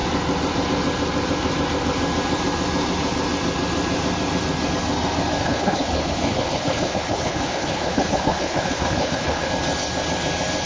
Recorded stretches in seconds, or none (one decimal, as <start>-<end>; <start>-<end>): 0.0-5.4; 9.5-10.7